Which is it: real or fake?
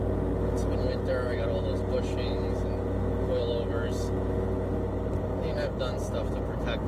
real